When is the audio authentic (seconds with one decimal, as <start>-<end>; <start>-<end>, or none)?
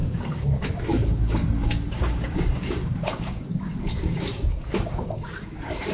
none